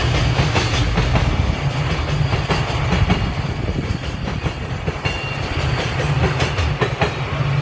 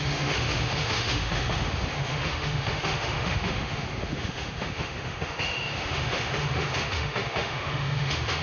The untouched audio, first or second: first